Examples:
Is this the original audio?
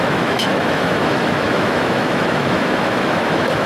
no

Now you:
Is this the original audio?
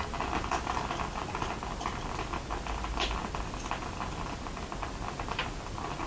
yes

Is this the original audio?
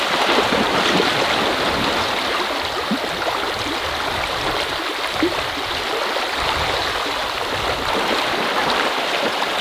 yes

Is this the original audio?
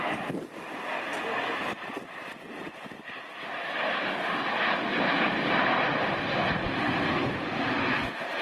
yes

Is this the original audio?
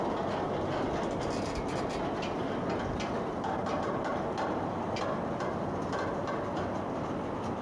yes